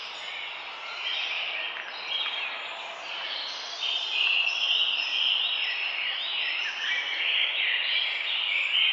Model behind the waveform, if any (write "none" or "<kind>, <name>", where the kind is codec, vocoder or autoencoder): none